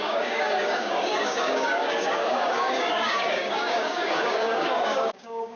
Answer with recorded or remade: remade